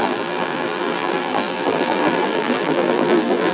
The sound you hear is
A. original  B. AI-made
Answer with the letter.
B